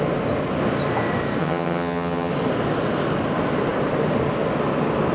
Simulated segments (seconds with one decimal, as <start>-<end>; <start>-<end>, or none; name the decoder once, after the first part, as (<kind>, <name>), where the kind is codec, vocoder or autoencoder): 1.4-2.3 (vocoder, HiFi-GAN)

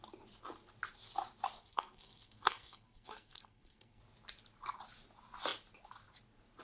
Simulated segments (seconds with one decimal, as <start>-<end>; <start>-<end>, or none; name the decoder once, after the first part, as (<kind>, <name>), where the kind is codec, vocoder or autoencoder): 1.6-4.0 (codec, SNAC)

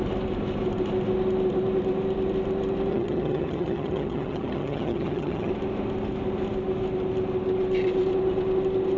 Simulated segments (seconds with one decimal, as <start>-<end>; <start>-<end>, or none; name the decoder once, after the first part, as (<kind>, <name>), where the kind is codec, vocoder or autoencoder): 2.9-5.5 (vocoder, HiFi-GAN)

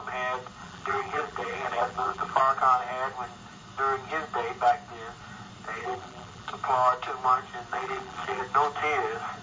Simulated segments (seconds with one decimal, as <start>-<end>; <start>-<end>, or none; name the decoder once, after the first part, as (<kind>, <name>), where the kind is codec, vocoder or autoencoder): 0.6-2.4 (vocoder, BigVGAN v2); 5.8-6.5; 7.7-8.4